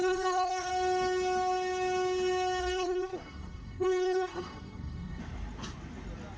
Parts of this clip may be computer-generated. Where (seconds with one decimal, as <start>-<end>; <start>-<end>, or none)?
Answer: 0.0-0.7; 2.6-5.2